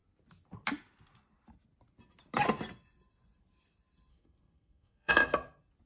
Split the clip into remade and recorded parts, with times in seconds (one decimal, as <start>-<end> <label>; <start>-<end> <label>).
0.0-4.1 recorded; 4.1-5.1 remade; 5.1-5.9 recorded